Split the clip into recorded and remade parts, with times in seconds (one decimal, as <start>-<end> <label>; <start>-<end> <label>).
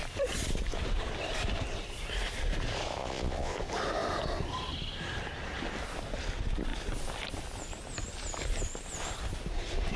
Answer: 0.0-3.0 recorded; 3.0-3.6 remade; 3.6-10.0 recorded